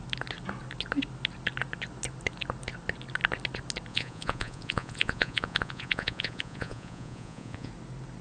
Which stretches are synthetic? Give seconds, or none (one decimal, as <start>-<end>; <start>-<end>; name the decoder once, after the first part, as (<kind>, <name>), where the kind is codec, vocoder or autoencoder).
3.9-7.7 (vocoder, Vocos)